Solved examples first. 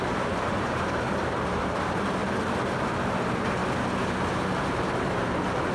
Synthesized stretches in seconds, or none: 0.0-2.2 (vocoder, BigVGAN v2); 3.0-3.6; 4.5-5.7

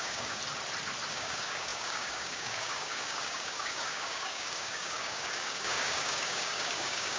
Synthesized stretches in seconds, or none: 0.0-0.4 (codec, DAC); 1.1-7.2